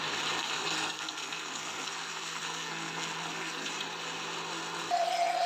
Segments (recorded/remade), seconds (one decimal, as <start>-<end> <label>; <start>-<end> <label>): 0.0-0.4 recorded; 0.4-3.7 remade; 3.7-5.5 recorded